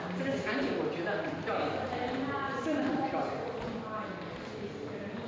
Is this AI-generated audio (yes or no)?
yes